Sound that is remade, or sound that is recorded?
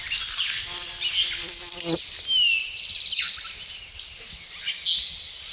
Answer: recorded